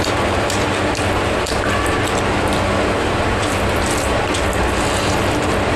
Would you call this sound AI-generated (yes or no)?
no